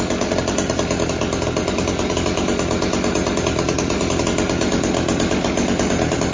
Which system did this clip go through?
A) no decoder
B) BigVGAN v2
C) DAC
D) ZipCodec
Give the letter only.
A